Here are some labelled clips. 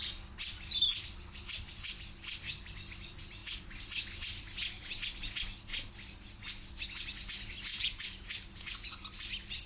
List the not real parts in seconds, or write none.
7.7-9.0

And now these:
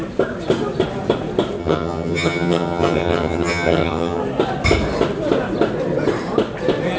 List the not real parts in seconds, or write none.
1.6-4.2

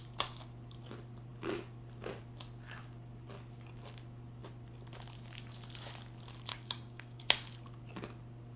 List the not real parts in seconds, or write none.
6.5-7.2